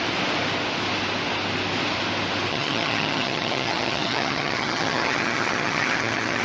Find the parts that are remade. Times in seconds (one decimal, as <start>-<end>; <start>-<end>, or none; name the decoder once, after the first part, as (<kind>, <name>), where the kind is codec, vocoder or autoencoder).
2.5-6.4 (vocoder, HiFi-GAN)